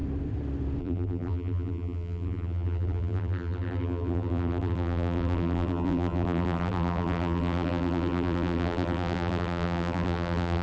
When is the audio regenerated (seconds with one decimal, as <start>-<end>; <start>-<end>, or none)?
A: 0.8-10.6